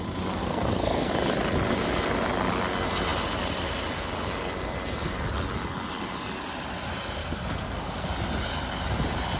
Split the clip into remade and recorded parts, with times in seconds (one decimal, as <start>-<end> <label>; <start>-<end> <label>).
0.0-0.4 recorded; 0.4-1.1 remade; 1.1-7.2 recorded; 7.2-8.1 remade; 8.1-9.4 recorded